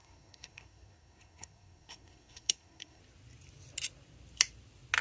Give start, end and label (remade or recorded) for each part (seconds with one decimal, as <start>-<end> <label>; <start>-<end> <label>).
0.0-3.0 remade; 3.0-5.0 recorded